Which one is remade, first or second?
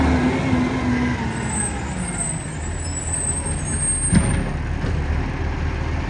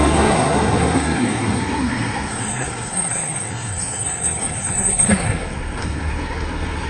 second